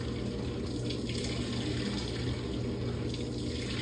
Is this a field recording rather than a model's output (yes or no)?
yes